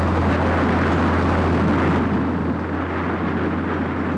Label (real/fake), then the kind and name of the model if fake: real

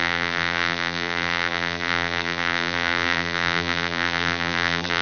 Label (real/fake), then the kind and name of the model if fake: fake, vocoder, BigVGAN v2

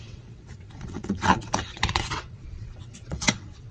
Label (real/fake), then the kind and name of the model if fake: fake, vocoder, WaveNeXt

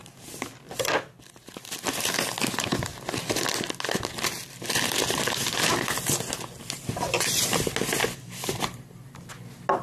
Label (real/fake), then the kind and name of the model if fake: real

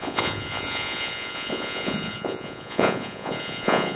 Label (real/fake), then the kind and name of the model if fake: fake, vocoder, Vocos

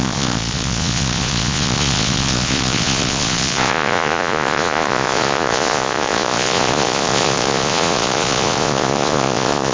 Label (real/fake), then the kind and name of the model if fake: fake, vocoder, Vocos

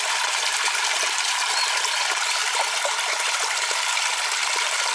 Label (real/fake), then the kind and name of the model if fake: real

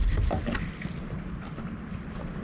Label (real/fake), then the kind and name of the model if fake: real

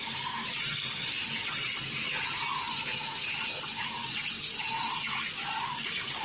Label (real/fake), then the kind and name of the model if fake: real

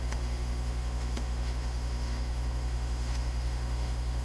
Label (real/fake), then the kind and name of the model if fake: fake, autoencoder, DAC-VAE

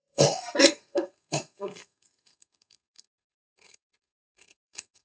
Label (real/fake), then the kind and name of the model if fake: fake, codec, SNAC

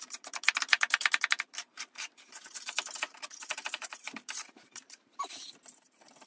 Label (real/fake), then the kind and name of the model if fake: fake, vocoder, BigVGAN v2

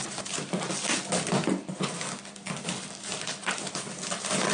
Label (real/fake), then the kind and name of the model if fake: real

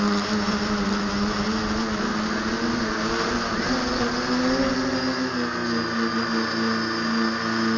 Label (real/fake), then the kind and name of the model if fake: real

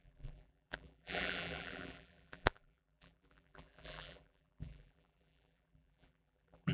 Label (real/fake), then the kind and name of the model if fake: fake, vocoder, BigVGAN v2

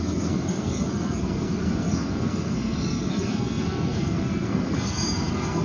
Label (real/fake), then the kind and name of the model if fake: fake, codec, SNAC